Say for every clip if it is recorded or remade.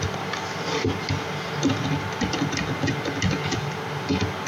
recorded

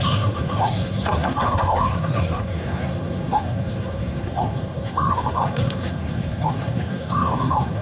remade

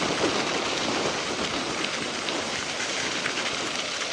recorded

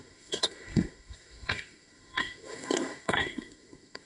remade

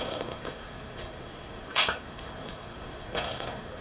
remade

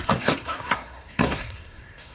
remade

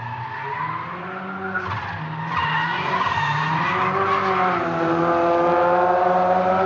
recorded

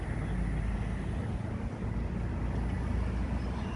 recorded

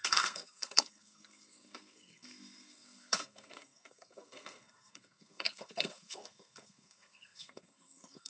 remade